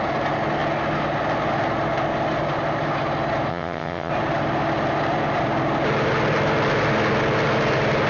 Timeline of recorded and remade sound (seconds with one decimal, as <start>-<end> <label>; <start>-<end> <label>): 0.0-3.5 recorded; 3.5-4.1 remade; 4.1-8.1 recorded